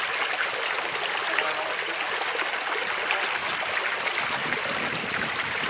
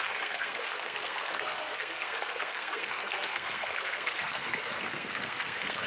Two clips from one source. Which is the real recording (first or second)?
first